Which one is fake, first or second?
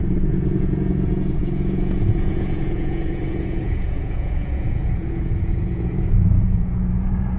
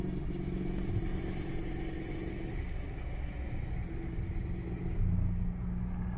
first